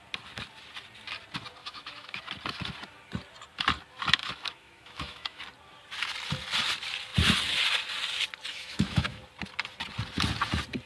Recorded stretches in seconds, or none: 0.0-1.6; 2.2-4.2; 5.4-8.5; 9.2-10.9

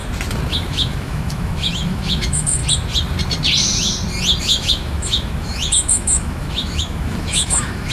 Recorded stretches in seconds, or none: 0.0-0.5; 2.6-4.4

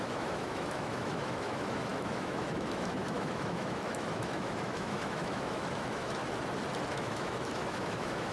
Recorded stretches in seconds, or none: 6.2-6.9

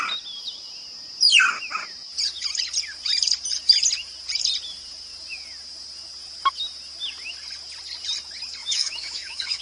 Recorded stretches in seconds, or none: 0.0-8.6